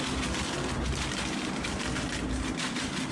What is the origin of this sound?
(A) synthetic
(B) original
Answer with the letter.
B